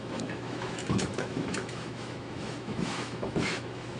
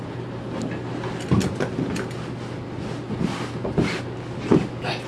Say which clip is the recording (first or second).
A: second